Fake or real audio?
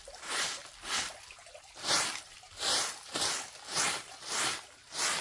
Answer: real